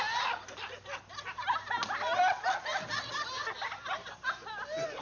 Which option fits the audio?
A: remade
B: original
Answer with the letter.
B